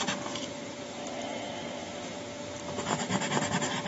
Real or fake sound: real